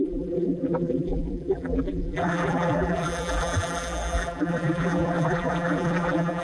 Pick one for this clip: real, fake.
fake